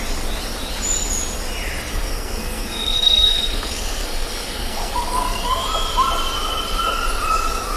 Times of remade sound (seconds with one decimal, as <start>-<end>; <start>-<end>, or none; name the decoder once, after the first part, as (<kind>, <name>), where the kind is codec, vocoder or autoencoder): 1.9-5.6 (codec, SNAC)